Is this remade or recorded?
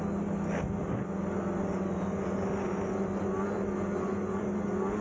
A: recorded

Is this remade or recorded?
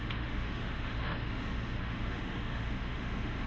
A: remade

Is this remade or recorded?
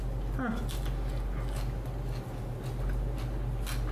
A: recorded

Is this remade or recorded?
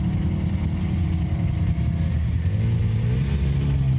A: recorded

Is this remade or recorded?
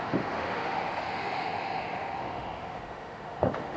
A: remade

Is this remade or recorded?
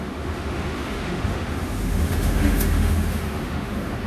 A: remade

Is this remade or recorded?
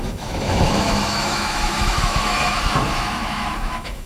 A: remade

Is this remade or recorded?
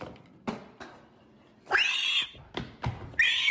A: recorded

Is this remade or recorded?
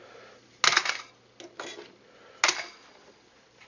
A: recorded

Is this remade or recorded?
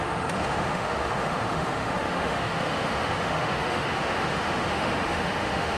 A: remade